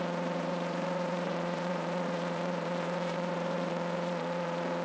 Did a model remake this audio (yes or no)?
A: yes